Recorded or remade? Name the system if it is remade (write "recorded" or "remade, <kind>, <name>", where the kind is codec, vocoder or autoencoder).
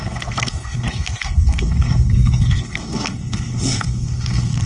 remade, codec, SNAC